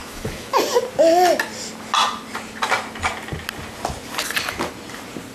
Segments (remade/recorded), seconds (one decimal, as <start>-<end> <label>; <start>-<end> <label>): 0.0-0.6 remade; 0.6-5.3 recorded

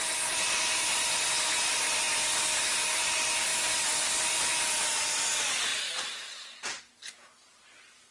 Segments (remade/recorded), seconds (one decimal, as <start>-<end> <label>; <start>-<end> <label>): 0.0-8.1 recorded

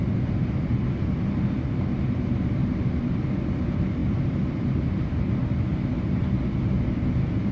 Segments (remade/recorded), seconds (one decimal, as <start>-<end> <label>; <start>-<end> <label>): 0.0-7.5 recorded

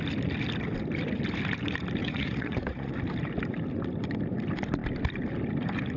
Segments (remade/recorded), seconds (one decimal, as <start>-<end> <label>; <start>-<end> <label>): 0.0-2.0 recorded; 2.0-2.9 remade; 2.9-6.0 recorded

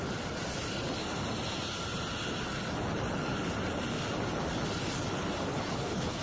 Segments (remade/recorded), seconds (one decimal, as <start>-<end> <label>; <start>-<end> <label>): 0.0-5.5 recorded; 5.5-6.2 remade

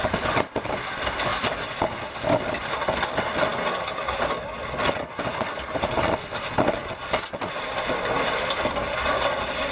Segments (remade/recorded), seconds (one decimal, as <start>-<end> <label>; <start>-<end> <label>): 0.0-9.7 recorded